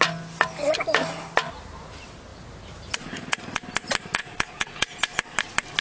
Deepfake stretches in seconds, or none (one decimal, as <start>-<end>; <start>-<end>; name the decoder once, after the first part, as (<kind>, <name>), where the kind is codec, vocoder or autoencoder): 4.2-5.2 (vocoder, Vocos)